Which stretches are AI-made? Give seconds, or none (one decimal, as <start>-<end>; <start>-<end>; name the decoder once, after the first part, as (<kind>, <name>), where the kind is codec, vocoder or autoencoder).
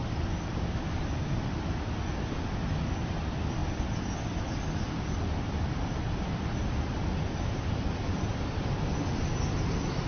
none